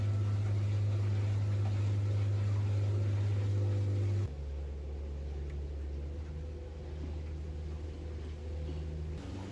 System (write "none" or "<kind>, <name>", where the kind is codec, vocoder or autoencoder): none